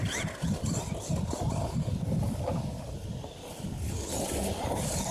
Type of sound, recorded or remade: recorded